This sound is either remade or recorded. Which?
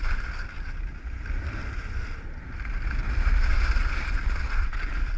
recorded